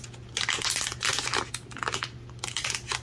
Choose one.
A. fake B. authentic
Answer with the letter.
B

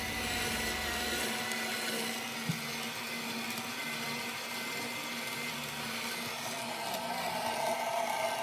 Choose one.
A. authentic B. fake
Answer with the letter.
A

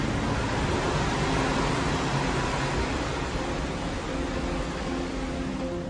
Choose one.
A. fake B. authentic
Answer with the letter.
B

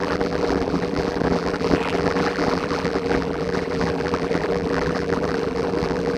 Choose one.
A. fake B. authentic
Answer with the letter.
A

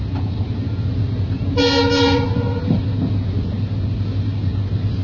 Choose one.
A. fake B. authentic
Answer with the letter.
B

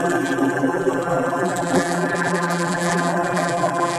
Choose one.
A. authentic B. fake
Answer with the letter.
B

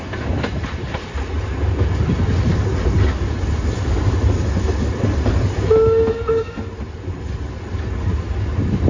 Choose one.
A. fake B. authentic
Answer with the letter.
B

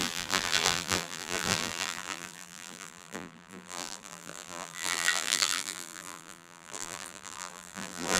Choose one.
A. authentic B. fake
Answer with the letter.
B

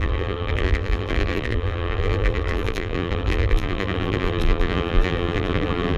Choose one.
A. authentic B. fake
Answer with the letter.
B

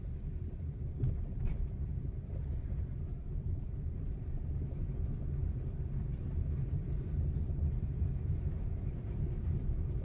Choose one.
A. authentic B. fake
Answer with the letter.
B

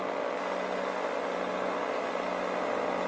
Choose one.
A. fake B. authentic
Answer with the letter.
B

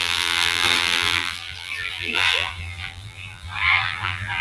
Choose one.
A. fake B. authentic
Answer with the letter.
A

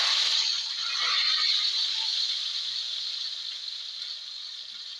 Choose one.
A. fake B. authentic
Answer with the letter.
B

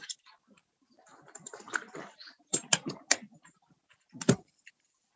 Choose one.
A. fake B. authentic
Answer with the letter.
B